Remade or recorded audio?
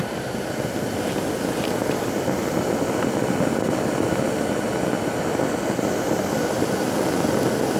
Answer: recorded